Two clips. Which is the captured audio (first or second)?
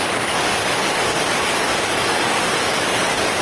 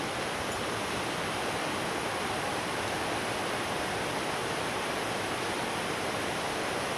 second